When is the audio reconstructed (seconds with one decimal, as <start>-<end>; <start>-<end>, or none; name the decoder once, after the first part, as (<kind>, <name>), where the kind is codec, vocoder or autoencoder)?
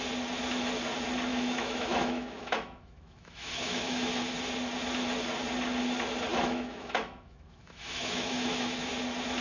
1.3-4.1 (autoencoder, DAC-VAE); 6.3-8.9